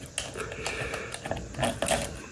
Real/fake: real